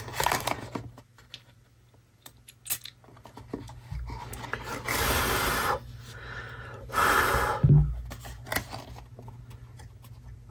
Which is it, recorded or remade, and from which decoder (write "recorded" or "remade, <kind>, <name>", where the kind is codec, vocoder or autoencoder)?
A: recorded